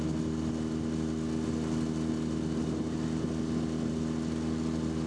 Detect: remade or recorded recorded